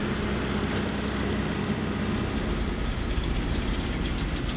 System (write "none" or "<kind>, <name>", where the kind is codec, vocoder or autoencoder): none